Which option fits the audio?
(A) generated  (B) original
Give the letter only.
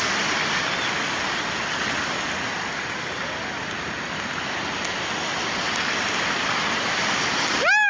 B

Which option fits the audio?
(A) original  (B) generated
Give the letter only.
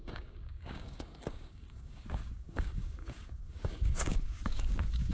B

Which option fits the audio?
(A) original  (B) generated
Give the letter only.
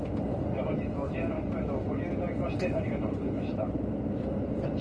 A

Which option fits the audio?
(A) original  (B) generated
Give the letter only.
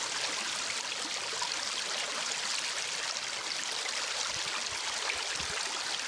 A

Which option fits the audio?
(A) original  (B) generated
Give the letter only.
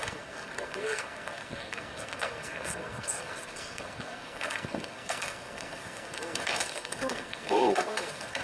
B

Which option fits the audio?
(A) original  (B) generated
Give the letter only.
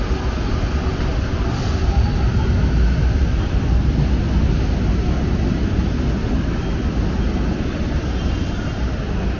A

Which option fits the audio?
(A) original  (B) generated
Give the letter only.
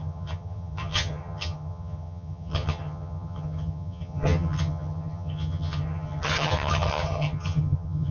B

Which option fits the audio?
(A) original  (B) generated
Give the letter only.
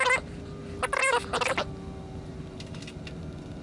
A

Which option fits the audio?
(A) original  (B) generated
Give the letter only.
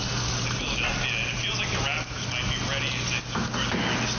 A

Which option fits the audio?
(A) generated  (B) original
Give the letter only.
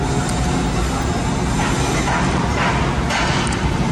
B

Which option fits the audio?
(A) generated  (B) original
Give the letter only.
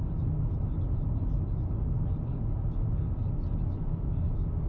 B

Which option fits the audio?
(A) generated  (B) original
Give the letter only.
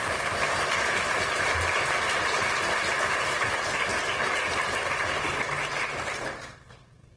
B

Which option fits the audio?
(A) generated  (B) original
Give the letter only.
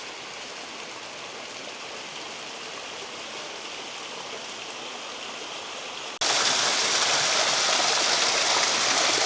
B